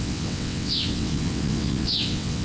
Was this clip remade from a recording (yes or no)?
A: yes